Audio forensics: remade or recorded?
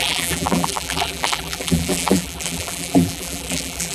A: remade